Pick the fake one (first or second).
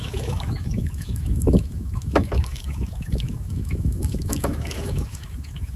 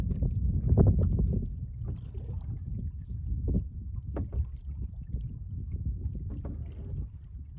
first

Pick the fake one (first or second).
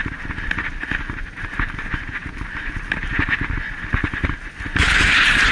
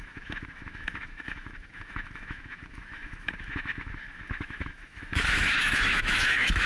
second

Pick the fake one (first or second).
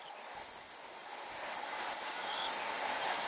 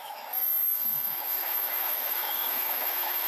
second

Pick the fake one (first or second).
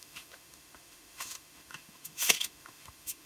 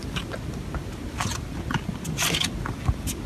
first